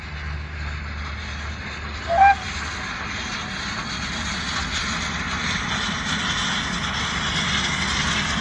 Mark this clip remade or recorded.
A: recorded